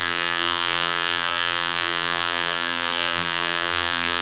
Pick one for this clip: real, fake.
fake